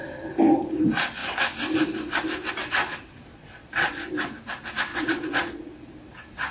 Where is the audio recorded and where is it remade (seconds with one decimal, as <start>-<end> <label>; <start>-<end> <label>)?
0.0-3.3 recorded; 3.3-4.1 remade; 4.1-4.9 recorded; 4.9-5.9 remade; 5.9-6.5 recorded

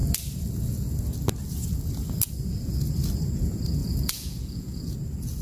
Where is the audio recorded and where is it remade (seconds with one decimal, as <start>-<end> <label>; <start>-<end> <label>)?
0.0-3.8 recorded; 3.8-4.9 remade; 4.9-5.4 recorded